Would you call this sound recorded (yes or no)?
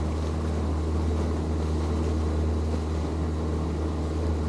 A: yes